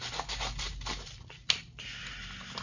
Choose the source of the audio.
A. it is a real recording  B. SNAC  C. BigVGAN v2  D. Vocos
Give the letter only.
A